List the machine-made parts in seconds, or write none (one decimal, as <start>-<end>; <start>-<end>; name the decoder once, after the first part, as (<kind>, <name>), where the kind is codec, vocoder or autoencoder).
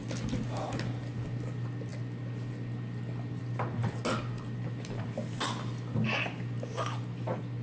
none